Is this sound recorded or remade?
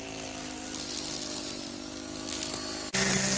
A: recorded